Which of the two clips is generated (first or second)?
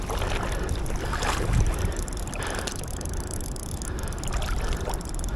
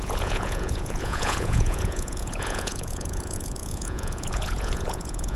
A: second